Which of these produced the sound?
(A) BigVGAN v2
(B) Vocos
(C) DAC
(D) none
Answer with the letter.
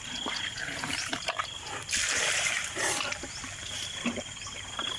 A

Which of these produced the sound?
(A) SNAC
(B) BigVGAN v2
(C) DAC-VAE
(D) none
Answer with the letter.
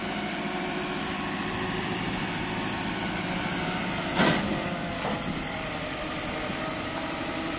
B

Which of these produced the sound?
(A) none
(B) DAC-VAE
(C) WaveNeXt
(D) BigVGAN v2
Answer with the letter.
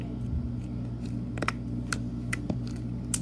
A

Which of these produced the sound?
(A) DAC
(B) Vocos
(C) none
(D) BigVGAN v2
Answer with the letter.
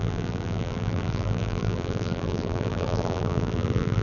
D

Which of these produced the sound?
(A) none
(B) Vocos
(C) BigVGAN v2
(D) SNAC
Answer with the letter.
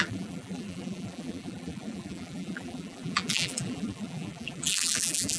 C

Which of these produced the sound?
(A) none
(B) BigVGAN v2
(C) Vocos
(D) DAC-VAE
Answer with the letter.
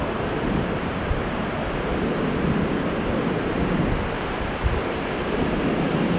B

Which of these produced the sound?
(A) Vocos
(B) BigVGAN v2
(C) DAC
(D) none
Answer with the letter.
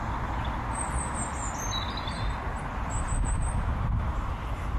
D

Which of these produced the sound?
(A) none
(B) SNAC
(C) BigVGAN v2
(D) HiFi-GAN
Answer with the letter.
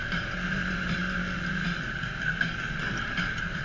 C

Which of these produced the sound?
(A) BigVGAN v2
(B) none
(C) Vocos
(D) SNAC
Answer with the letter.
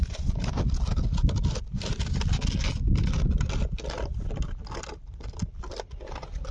B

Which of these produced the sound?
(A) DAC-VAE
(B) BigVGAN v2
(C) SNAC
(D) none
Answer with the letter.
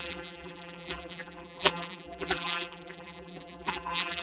B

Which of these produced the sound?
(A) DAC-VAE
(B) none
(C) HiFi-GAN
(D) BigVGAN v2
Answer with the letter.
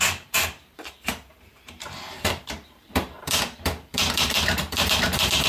D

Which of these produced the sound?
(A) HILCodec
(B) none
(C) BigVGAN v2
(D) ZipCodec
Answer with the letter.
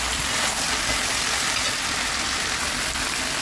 C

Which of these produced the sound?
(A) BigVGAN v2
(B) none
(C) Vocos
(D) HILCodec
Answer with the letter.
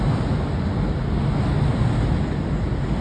B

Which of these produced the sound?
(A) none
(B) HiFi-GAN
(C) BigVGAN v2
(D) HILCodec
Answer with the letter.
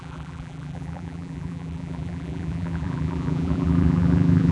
C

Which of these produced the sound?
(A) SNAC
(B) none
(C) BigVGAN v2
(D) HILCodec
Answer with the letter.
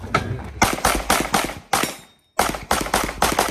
B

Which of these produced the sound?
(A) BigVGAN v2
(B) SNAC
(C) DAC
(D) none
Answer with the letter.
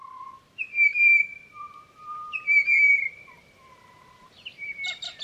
A